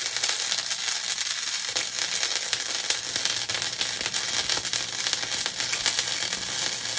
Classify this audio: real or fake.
real